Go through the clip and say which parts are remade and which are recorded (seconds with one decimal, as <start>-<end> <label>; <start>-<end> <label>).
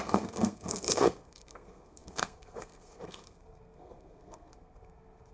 0.0-5.3 remade